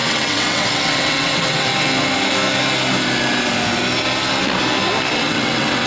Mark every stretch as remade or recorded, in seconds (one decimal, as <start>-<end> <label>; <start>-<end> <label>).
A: 0.0-1.7 remade; 1.7-5.2 recorded; 5.2-5.9 remade